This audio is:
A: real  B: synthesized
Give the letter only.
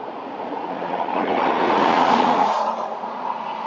B